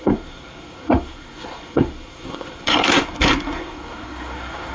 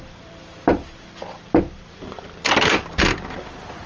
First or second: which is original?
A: second